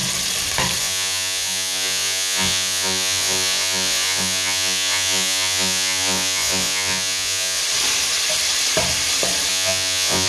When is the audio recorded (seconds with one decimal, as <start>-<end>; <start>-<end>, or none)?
0.0-0.8; 7.6-9.5